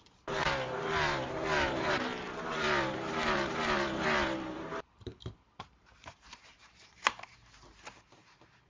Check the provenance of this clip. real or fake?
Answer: fake